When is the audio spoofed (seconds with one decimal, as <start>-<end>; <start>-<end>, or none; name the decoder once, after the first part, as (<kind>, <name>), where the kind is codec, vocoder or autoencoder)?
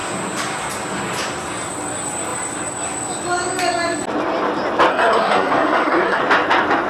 4.9-6.2 (codec, SNAC)